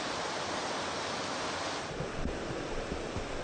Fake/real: real